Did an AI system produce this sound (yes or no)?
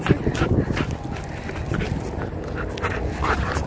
no